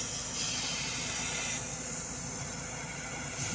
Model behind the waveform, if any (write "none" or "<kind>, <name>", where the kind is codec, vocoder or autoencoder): none